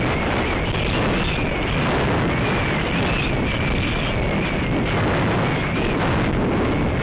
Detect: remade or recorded recorded